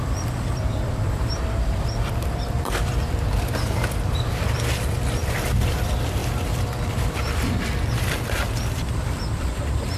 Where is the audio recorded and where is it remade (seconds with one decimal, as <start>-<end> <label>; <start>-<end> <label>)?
0.0-6.2 remade; 6.2-6.9 recorded; 6.9-10.0 remade